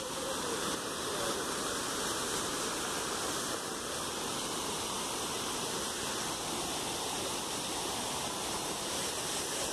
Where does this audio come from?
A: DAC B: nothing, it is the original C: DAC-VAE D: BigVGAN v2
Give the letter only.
D